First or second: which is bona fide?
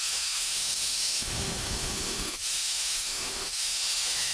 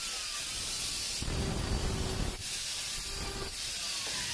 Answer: second